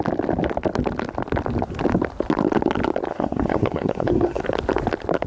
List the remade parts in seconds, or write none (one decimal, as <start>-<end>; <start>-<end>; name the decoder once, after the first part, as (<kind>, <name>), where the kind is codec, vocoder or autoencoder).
3.1-4.4 (codec, SNAC)